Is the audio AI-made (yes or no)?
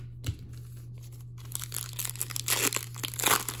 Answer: no